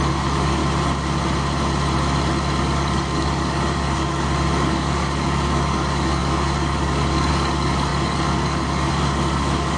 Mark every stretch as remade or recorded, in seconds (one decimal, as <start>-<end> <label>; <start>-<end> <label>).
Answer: 0.0-0.6 remade; 0.6-2.6 recorded; 2.6-9.8 remade